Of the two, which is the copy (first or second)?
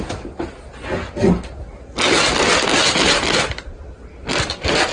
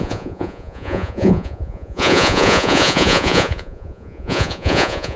second